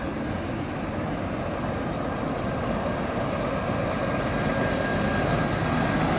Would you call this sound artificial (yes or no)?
no